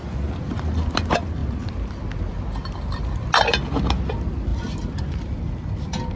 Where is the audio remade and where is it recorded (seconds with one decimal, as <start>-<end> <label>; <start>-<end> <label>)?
0.0-6.2 recorded